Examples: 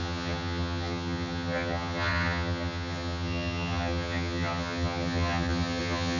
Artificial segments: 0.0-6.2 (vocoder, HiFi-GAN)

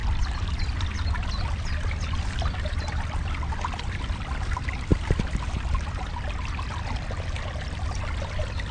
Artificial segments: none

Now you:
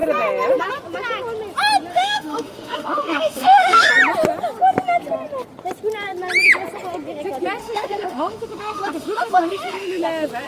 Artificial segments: 1.9-3.9 (autoencoder, DAC-VAE); 7.6-10.0

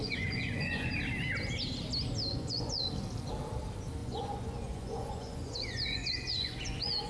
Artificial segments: 0.0-0.9 (vocoder, Vocos); 2.3-2.9; 4.0-7.1

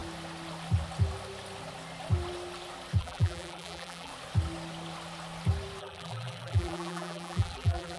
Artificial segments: 3.0-4.1 (vocoder, BigVGAN v2); 5.8-8.0

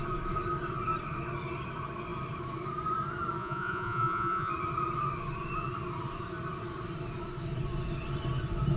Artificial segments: 3.4-4.5 (vocoder, Vocos)